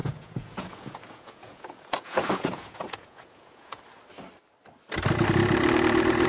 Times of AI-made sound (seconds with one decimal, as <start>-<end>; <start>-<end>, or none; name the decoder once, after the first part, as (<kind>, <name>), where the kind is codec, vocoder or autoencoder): 0.0-3.8 (vocoder, Vocos)